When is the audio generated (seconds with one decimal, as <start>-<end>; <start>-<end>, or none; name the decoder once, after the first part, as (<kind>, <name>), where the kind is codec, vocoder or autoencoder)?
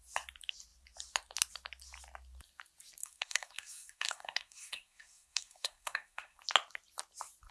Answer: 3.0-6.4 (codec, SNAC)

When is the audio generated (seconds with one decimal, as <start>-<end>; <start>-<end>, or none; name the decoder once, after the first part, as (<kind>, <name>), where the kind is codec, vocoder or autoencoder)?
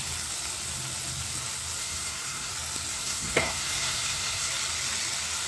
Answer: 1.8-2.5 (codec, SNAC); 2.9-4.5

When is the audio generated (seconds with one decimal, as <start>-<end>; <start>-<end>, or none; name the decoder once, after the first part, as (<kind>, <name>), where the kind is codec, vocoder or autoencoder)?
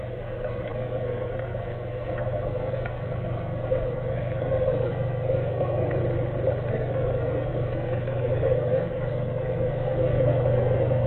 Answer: 0.0-6.0 (codec, SNAC); 6.7-11.1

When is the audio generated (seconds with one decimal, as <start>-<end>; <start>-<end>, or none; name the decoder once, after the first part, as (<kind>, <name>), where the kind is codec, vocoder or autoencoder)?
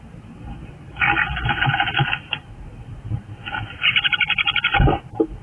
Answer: none